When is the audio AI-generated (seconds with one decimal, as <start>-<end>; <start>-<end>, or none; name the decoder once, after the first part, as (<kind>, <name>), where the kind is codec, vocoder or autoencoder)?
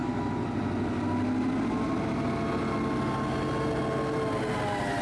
none